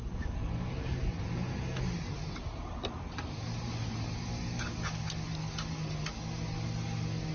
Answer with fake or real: real